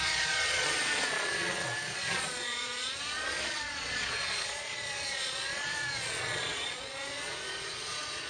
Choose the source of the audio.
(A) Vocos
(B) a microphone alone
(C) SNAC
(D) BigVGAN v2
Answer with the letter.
A